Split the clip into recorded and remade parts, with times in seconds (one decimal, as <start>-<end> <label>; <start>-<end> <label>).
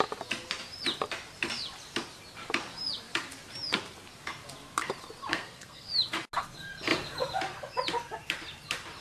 0.0-5.3 recorded; 5.3-5.9 remade; 5.9-9.0 recorded